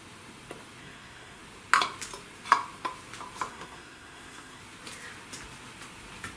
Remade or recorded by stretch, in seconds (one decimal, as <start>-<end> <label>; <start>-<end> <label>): 0.0-0.8 recorded; 0.8-1.4 remade; 1.4-3.5 recorded; 3.5-4.6 remade; 4.6-6.4 recorded